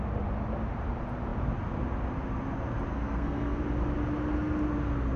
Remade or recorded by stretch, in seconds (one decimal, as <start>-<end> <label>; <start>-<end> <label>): 0.0-2.9 recorded; 2.9-3.6 remade; 3.6-5.2 recorded